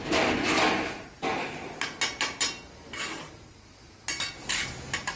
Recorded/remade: recorded